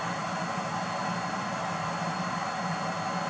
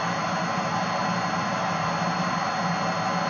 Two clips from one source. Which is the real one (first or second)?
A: second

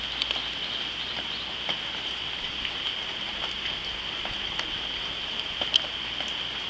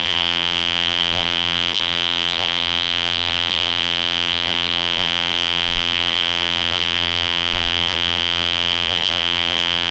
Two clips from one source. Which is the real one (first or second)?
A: first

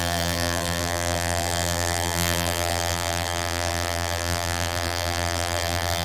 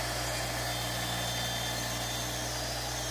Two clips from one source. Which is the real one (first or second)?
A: second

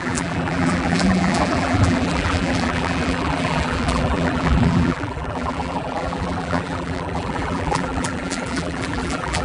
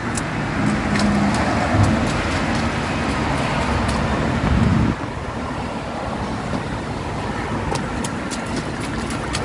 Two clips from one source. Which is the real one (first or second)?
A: second